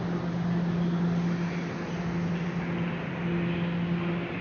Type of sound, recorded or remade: recorded